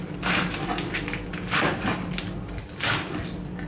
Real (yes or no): yes